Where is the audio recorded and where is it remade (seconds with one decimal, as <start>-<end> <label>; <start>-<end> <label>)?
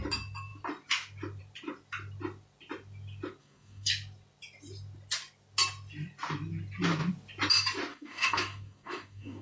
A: 0.0-3.4 recorded; 3.4-3.9 remade; 3.9-7.9 recorded; 7.9-9.4 remade